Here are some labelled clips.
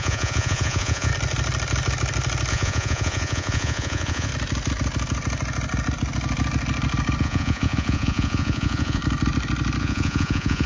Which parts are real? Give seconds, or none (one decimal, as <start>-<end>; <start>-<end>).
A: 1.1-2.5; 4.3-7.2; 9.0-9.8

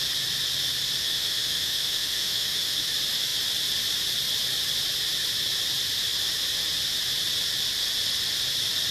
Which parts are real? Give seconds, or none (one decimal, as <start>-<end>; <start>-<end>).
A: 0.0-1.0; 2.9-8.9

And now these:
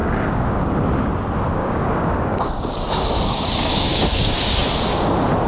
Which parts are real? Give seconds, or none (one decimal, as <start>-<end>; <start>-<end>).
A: 0.6-1.6; 4.7-5.5